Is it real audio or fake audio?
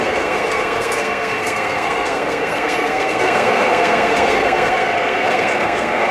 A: fake